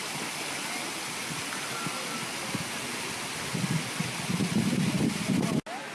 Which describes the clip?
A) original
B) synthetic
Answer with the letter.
A